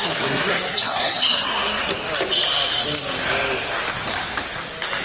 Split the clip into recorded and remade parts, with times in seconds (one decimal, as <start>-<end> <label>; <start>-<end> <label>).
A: 0.0-1.9 remade; 1.9-5.0 recorded